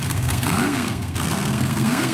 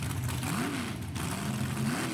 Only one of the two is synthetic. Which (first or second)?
first